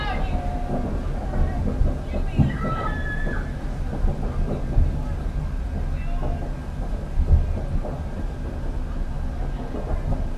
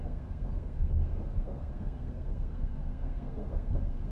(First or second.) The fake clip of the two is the second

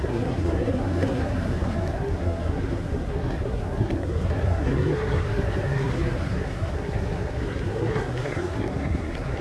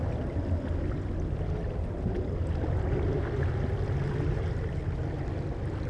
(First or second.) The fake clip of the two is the first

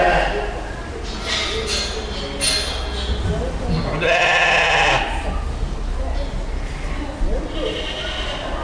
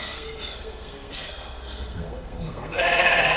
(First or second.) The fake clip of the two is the second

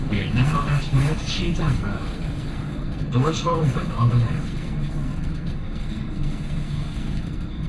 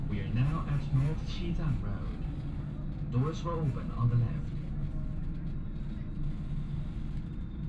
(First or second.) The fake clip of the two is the first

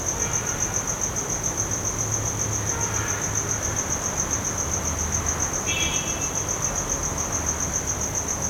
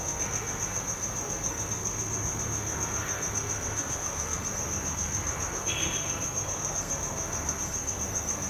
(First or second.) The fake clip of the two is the second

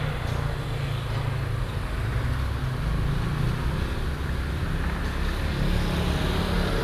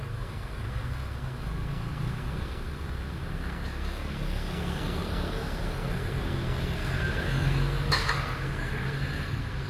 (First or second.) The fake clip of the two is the second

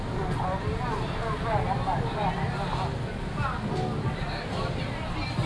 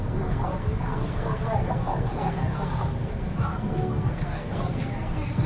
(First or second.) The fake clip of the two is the second